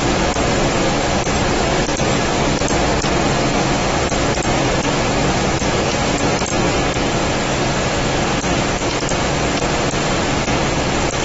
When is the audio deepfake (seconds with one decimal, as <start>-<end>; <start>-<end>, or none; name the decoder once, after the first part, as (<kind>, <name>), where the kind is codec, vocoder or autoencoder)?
none